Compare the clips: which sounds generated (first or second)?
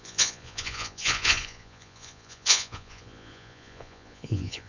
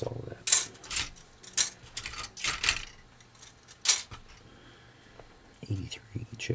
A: first